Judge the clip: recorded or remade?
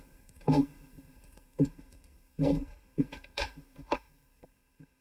remade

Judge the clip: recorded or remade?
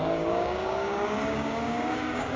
remade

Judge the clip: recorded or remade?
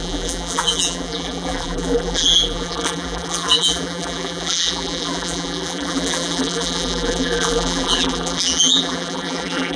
remade